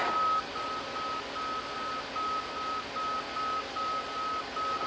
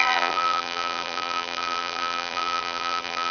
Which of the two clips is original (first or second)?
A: first